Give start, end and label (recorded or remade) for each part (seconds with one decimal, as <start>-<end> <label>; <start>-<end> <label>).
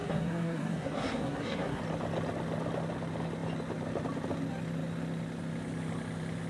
0.0-1.8 remade; 1.8-6.5 recorded